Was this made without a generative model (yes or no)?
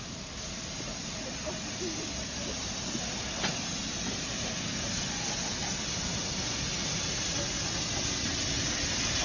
yes